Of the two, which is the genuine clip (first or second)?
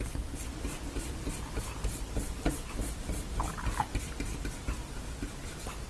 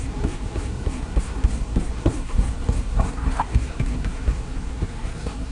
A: first